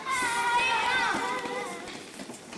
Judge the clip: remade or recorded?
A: recorded